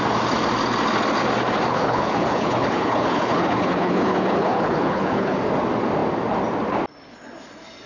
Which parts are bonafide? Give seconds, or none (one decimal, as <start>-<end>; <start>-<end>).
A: 0.0-1.7; 5.4-7.9

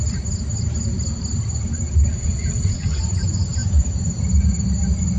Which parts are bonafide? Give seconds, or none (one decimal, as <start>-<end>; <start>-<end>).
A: 0.0-2.1; 3.0-5.2

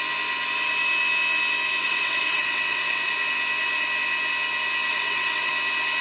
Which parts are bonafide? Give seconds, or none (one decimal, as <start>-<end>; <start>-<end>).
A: 0.0-1.8; 3.1-4.9; 5.5-6.0

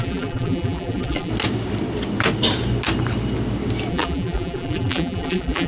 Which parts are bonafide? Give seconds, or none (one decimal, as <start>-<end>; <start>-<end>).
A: 1.3-3.9